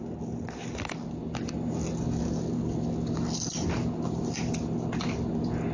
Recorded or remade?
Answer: recorded